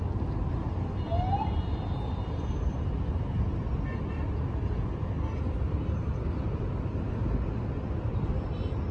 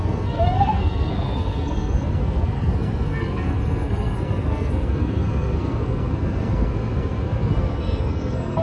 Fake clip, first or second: second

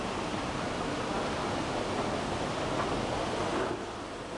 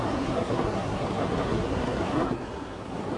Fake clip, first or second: second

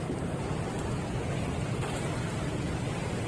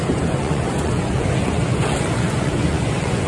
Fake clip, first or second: second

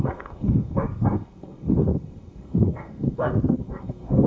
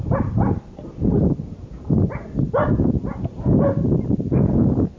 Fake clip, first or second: first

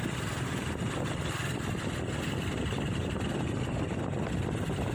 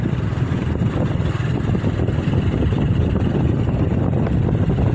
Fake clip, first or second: second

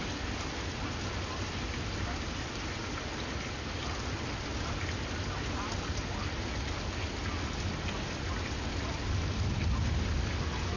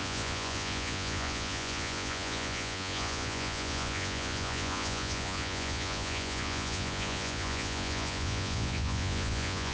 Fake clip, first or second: second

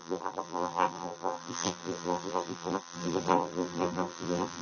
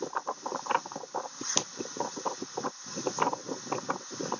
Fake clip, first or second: first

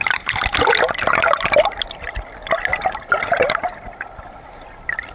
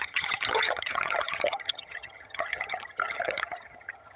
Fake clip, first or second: second